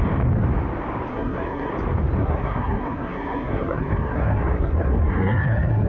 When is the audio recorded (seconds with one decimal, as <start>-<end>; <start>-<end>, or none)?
0.0-1.1; 1.7-2.2